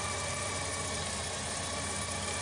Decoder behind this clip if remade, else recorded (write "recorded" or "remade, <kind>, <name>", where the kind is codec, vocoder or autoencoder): recorded